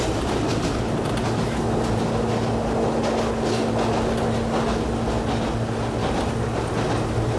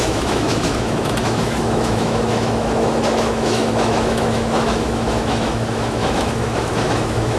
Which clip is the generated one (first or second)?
second